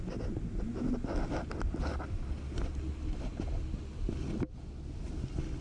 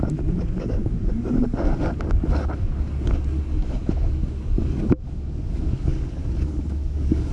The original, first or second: first